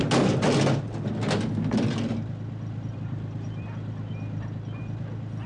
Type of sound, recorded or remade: recorded